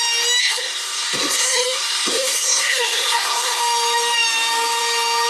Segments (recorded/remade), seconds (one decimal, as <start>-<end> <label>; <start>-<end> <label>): 0.0-0.4 recorded; 0.4-3.6 remade; 3.6-5.3 recorded